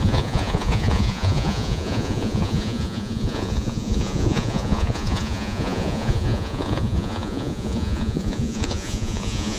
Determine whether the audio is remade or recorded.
remade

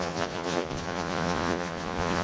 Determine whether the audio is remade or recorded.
remade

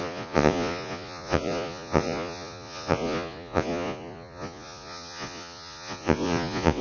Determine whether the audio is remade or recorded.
remade